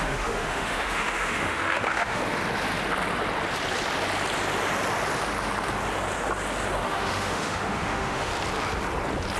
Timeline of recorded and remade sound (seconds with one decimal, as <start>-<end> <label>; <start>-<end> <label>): 0.0-2.2 remade; 2.2-6.8 recorded; 6.8-8.3 remade; 8.3-9.4 recorded